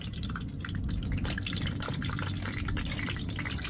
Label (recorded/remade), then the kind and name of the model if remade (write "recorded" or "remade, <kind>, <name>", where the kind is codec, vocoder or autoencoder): recorded